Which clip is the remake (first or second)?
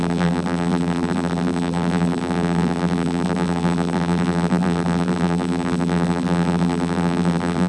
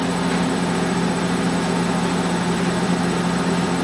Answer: first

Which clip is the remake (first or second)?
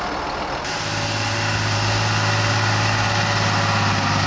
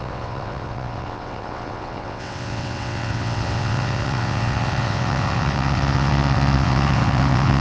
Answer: second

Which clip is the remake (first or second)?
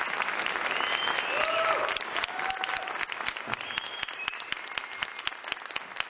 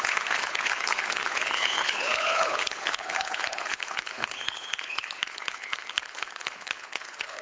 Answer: second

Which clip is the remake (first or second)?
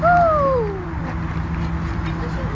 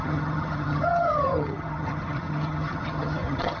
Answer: second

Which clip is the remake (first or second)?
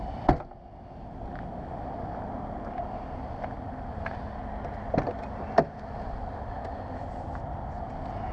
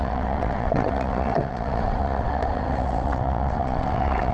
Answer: second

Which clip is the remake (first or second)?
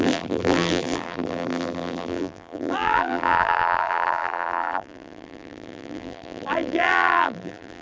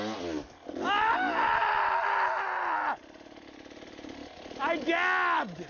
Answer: first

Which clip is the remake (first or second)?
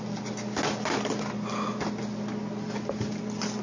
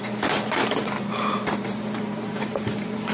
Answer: second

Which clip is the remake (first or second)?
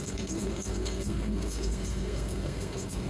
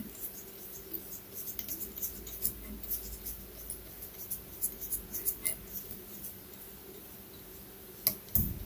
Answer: first